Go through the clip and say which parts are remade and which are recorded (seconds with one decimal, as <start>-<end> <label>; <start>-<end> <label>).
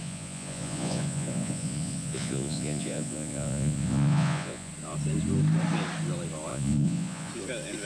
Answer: 0.0-4.7 remade; 4.7-6.5 recorded; 6.5-7.3 remade; 7.3-7.8 recorded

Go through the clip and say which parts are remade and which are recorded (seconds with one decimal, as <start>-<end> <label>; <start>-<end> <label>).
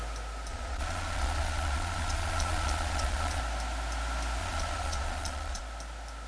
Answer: 0.0-0.5 recorded; 0.5-3.4 remade; 3.4-4.4 recorded; 4.4-5.6 remade; 5.6-6.3 recorded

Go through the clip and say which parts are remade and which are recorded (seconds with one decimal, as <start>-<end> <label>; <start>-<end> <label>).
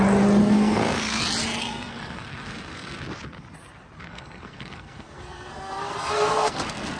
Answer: 0.0-0.4 recorded; 0.4-1.2 remade; 1.2-1.6 recorded; 1.6-3.0 remade; 3.0-4.0 recorded; 4.0-7.0 remade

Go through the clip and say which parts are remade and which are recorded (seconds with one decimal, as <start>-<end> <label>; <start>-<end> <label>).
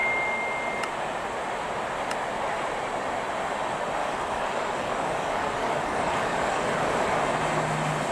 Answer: 0.0-4.0 recorded; 4.0-7.2 remade; 7.2-8.1 recorded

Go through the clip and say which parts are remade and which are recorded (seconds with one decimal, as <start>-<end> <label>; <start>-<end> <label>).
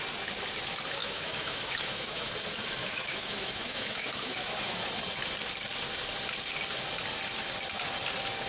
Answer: 0.0-1.0 recorded; 1.0-2.3 remade; 2.3-2.8 recorded; 2.8-4.8 remade; 4.8-8.5 recorded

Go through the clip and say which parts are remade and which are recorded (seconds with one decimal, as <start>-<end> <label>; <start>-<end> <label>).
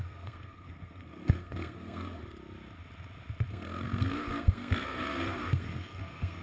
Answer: 0.0-2.2 remade; 2.2-3.5 recorded; 3.5-6.4 remade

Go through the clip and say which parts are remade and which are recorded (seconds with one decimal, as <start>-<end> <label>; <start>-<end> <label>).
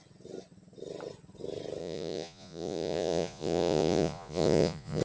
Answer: 0.0-1.8 recorded; 1.8-5.0 remade